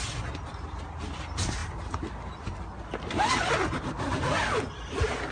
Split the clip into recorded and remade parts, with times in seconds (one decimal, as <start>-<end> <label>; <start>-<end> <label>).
0.0-5.3 recorded